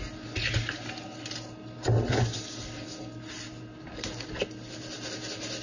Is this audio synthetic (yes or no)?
no